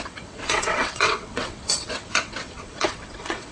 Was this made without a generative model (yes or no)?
no